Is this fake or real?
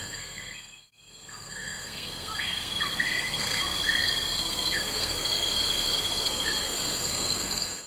fake